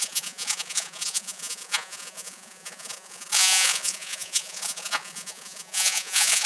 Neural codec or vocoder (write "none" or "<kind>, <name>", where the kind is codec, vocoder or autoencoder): vocoder, Vocos